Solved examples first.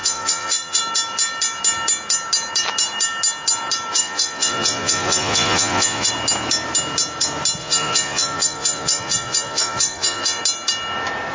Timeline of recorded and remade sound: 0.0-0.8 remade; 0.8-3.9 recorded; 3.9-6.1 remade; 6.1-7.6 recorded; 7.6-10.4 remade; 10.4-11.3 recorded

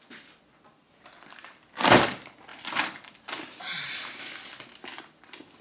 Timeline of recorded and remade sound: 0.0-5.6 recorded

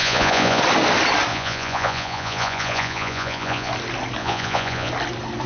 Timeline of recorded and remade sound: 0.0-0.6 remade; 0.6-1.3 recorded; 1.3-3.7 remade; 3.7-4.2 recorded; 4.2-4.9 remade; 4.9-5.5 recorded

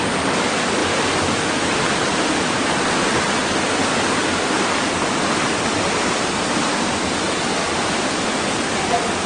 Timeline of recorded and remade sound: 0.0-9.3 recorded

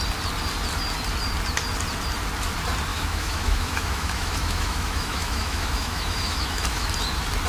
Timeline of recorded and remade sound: 0.0-2.9 recorded; 2.9-6.9 remade; 6.9-7.5 recorded